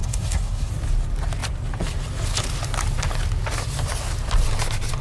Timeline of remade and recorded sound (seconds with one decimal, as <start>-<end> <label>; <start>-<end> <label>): 0.0-0.7 remade; 0.7-5.0 recorded